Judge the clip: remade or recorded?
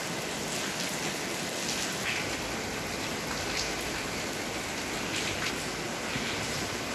recorded